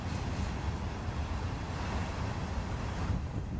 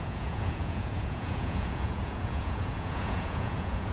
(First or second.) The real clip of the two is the first